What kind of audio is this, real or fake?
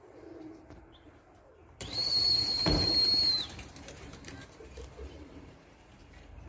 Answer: fake